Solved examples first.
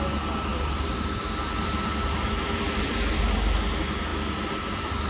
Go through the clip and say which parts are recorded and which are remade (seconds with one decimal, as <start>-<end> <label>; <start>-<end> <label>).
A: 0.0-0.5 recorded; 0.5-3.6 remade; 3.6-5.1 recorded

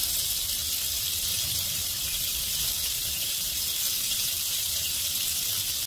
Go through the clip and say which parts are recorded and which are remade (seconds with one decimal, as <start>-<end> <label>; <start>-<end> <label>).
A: 0.0-1.3 recorded; 1.3-4.8 remade; 4.8-5.9 recorded

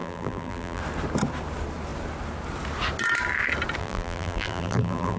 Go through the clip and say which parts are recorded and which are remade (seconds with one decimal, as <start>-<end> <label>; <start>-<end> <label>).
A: 0.0-0.8 remade; 0.8-3.8 recorded; 3.8-5.2 remade

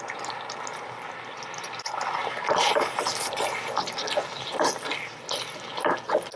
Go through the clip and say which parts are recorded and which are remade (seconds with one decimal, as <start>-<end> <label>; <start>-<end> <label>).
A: 0.0-2.2 recorded; 2.2-3.7 remade; 3.7-6.4 recorded

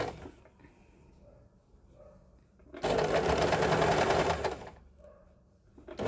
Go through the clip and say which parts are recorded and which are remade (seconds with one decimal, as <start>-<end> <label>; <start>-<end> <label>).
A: 0.0-3.9 recorded; 3.9-5.4 remade; 5.4-6.1 recorded

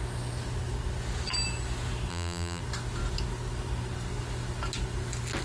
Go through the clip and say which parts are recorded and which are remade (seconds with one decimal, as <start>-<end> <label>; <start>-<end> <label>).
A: 0.0-2.1 recorded; 2.1-2.6 remade; 2.6-5.4 recorded

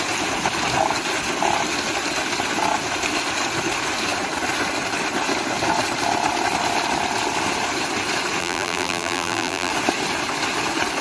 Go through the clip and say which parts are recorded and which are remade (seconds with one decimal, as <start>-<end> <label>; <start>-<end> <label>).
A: 0.0-8.4 recorded; 8.4-9.7 remade; 9.7-11.0 recorded

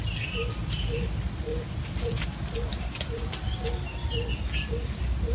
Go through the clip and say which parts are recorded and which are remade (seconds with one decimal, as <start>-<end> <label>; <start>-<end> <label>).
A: 0.0-1.5 recorded; 1.5-2.1 remade; 2.1-2.7 recorded; 2.7-3.5 remade; 3.5-5.3 recorded